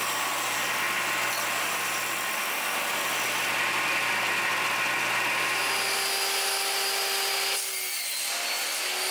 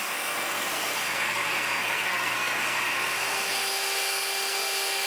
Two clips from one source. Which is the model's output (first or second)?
second